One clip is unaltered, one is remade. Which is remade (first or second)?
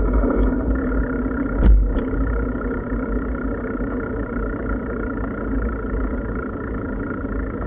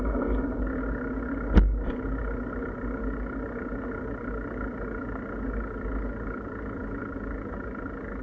first